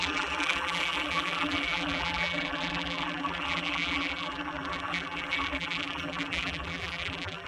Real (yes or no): no